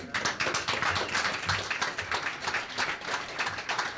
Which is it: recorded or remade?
recorded